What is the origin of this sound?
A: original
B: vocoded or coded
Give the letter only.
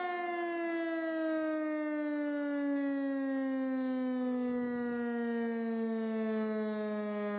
A